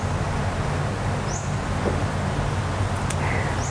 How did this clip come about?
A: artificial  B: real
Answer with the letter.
B